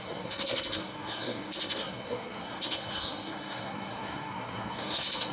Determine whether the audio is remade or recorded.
remade